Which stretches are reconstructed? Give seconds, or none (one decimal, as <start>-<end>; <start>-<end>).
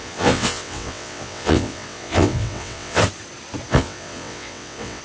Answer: 0.0-3.0; 3.7-5.0